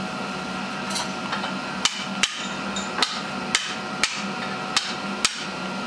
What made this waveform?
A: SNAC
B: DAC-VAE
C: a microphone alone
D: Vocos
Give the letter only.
C